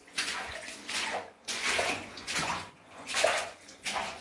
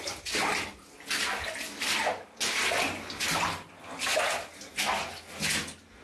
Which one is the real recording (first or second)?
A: second